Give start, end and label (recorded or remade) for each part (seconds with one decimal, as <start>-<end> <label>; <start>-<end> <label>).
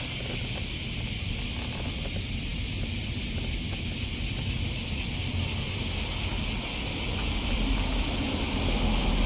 0.0-9.3 recorded